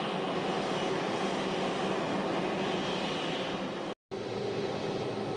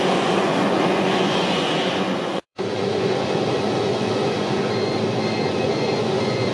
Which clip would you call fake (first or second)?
second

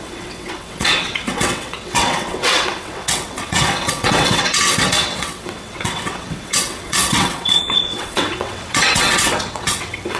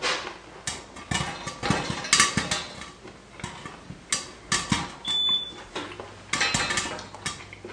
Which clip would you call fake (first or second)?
first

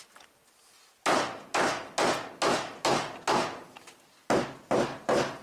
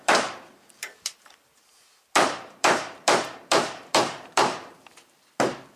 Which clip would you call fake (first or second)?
second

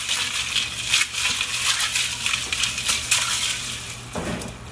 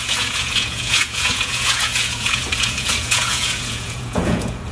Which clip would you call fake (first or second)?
second